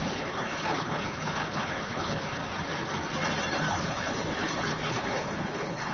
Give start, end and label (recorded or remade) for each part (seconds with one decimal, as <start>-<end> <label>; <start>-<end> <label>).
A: 0.0-2.4 remade; 2.4-3.6 recorded; 3.6-5.9 remade